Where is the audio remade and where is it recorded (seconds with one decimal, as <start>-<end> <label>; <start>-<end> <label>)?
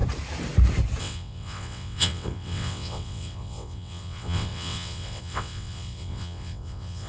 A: 0.0-1.0 recorded; 1.0-7.1 remade